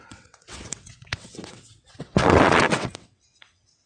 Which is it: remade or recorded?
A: remade